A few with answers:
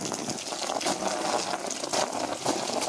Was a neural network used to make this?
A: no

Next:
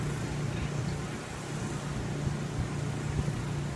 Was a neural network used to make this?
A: no